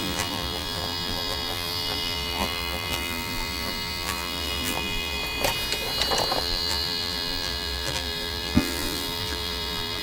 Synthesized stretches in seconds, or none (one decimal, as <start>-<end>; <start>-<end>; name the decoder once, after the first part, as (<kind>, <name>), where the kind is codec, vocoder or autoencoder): 0.0-5.2 (vocoder, BigVGAN v2); 6.4-10.0